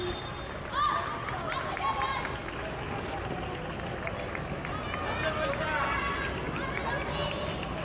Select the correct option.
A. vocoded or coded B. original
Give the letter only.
B